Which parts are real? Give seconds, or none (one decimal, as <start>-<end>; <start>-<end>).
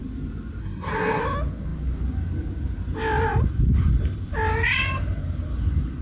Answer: 0.0-0.6; 1.2-6.0